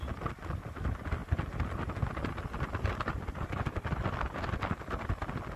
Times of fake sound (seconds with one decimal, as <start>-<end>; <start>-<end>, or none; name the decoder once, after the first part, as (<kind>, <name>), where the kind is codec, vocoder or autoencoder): none